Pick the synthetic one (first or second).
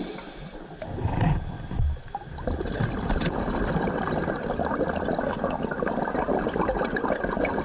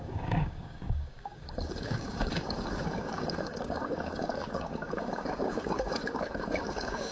second